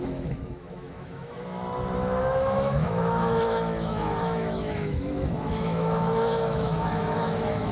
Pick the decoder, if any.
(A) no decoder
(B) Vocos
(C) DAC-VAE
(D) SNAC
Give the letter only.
C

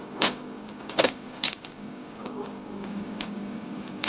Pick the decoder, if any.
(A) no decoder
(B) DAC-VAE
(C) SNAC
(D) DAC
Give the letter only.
D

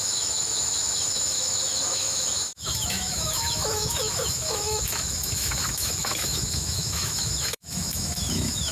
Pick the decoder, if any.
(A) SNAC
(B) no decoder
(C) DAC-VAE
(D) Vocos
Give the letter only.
C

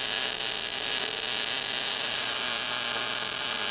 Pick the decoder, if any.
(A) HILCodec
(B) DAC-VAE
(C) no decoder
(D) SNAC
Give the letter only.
C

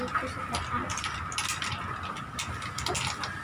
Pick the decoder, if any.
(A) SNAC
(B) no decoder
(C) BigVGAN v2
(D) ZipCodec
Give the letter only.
B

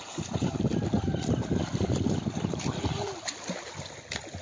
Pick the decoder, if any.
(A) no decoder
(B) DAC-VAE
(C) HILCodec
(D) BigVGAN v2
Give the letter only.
D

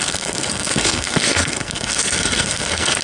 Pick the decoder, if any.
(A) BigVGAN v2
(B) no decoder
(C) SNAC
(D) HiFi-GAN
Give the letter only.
C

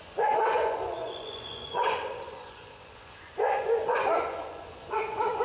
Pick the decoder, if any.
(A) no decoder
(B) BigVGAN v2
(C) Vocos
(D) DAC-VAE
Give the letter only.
C